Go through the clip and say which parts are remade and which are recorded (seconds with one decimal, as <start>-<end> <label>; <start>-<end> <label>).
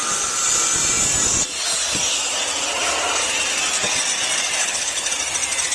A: 0.0-4.6 recorded; 4.6-5.1 remade; 5.1-5.7 recorded